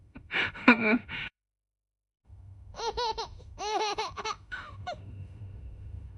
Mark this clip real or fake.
fake